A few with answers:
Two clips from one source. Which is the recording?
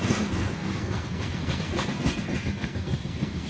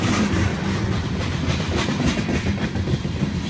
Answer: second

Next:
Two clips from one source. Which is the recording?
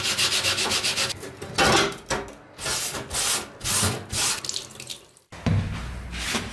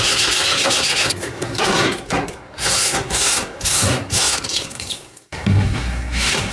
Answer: first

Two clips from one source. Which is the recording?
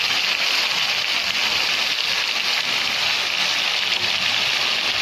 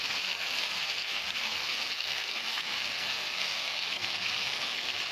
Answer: first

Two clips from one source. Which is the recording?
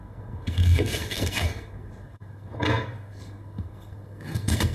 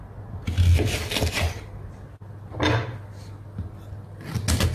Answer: second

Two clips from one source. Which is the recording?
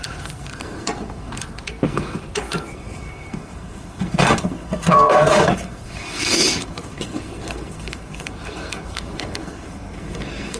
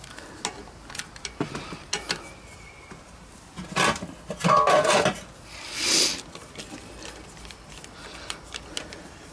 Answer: second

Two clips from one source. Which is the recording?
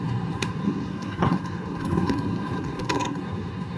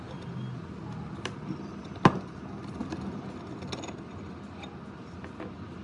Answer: second